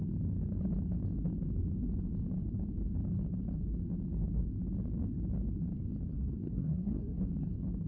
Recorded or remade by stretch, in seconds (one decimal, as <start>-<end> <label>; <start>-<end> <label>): 0.0-6.1 recorded; 6.1-7.2 remade; 7.2-7.9 recorded